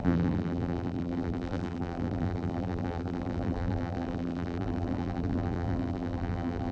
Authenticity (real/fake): fake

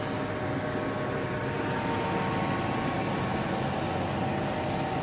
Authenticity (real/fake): real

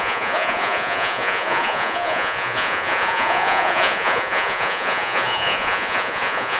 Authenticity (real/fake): fake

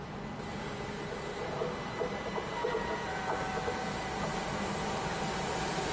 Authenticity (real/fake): real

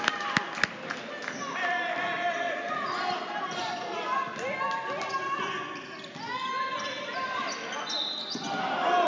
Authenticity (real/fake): real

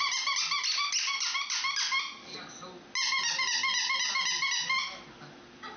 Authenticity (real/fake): real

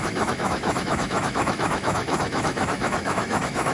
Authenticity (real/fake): fake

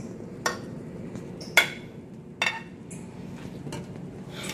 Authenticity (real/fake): real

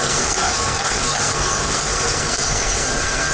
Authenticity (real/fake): fake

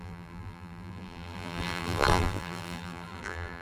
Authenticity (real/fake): fake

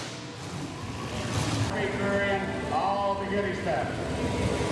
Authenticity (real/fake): real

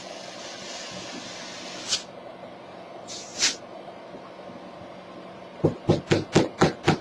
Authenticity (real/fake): real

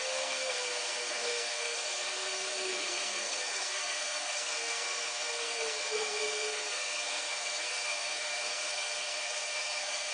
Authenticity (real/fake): fake